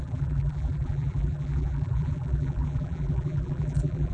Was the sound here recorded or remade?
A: remade